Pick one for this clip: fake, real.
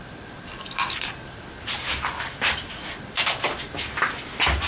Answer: real